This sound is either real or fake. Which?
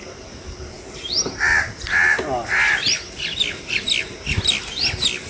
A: real